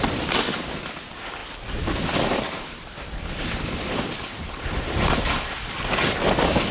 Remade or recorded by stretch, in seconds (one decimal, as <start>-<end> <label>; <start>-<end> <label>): 0.0-6.7 recorded